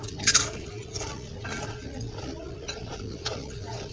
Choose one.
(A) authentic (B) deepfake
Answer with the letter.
B